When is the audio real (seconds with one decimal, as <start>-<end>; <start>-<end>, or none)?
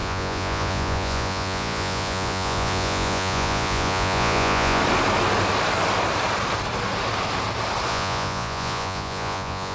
4.8-7.9